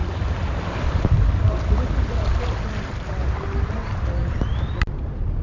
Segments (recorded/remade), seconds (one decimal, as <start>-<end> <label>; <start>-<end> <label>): 0.0-5.4 recorded